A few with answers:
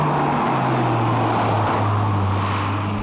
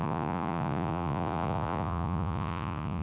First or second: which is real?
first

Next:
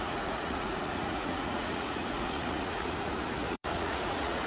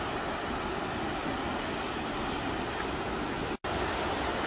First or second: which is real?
second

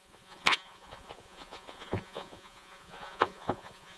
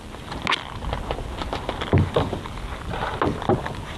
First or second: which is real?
second